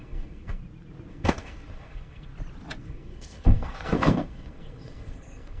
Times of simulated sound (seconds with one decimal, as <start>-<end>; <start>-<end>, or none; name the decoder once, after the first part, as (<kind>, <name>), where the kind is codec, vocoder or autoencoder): 0.0-0.6 (codec, SNAC); 1.1-2.3; 2.8-5.6